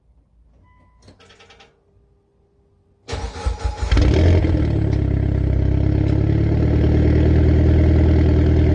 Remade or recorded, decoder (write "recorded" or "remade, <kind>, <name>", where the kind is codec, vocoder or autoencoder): recorded